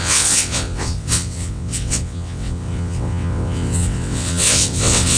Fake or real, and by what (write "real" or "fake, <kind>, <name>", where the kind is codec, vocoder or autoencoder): fake, vocoder, WaveNeXt